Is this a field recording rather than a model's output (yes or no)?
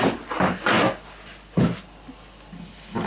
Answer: yes